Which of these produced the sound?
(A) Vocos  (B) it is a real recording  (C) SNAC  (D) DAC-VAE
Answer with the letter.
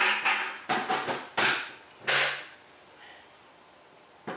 B